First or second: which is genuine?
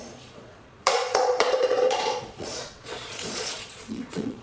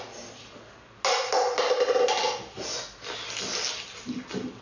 second